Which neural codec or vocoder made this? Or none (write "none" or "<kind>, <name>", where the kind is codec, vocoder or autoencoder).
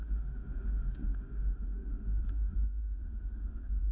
autoencoder, DAC-VAE